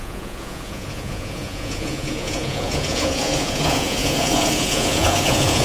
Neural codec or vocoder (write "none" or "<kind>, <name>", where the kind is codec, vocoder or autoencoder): vocoder, Vocos